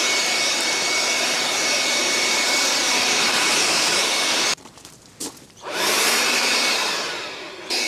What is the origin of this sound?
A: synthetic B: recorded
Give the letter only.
A